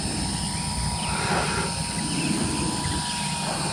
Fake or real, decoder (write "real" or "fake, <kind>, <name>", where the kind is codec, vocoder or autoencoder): real